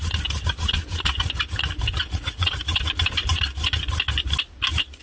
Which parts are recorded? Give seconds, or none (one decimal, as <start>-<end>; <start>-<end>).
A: 0.0-2.0; 2.6-5.0